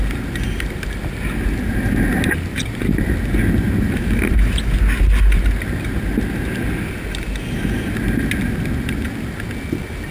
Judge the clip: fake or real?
real